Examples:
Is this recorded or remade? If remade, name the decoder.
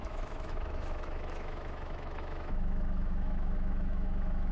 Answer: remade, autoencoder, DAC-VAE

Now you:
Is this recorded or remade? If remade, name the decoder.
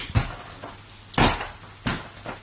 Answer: recorded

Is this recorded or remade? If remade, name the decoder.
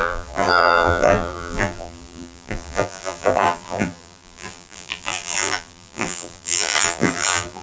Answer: remade, vocoder, BigVGAN v2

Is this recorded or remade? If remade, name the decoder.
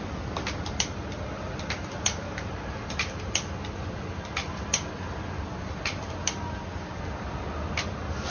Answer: recorded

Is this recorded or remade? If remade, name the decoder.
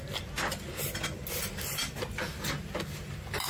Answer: recorded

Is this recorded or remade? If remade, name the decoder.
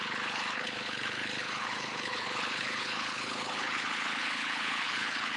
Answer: remade, codec, HILCodec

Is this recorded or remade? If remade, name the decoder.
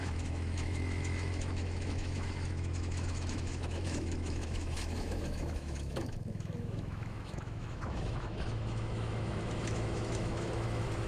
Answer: remade, autoencoder, DAC-VAE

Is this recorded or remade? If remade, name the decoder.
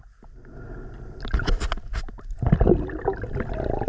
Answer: recorded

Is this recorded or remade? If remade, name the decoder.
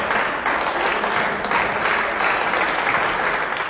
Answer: recorded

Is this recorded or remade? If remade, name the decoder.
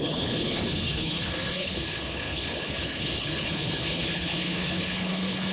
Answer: remade, codec, HILCodec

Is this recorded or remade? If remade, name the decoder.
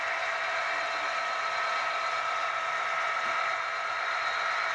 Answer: recorded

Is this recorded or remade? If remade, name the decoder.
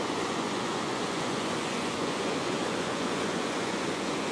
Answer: remade, vocoder, Vocos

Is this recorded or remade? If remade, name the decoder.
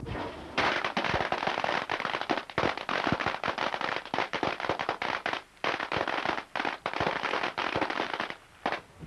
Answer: remade, vocoder, BigVGAN v2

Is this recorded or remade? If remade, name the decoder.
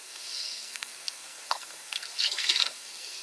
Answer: remade, codec, SNAC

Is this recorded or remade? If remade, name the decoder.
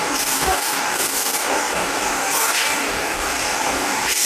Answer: remade, codec, DAC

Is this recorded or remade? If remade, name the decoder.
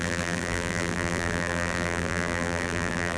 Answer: remade, vocoder, BigVGAN v2